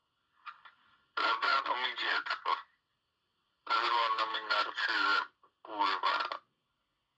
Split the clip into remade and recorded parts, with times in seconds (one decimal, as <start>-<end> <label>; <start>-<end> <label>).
0.0-2.9 recorded; 2.9-4.3 remade; 4.3-7.2 recorded